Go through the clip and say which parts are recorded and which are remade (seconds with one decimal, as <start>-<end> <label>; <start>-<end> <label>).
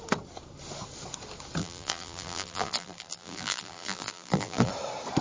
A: 0.0-1.6 recorded; 1.6-4.7 remade; 4.7-5.2 recorded